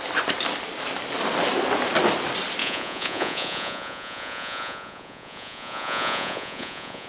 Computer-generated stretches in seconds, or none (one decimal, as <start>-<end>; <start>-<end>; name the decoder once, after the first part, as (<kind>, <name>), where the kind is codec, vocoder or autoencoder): 2.6-7.1 (vocoder, Vocos)